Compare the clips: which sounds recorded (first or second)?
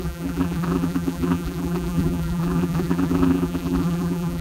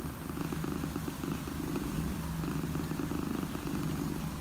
second